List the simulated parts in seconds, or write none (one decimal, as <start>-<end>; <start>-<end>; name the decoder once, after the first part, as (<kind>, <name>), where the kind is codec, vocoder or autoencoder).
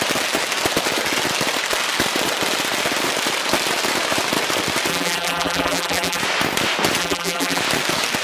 4.9-6.2 (vocoder, BigVGAN v2); 7.0-7.6